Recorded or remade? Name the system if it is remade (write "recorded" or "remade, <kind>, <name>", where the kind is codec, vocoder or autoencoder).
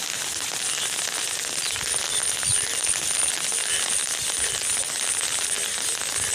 recorded